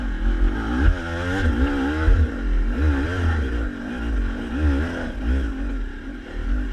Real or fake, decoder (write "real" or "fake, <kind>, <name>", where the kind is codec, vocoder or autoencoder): real